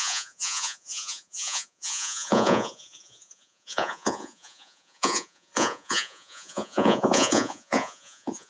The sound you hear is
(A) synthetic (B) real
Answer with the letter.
A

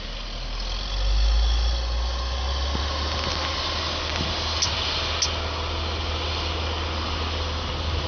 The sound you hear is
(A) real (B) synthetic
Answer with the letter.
A